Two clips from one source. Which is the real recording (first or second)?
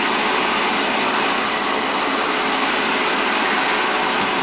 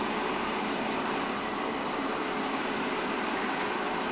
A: first